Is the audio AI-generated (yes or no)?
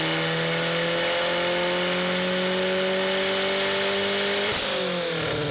no